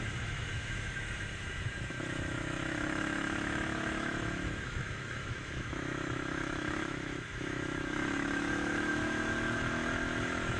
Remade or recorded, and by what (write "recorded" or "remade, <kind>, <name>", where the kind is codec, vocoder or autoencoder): remade, autoencoder, DAC-VAE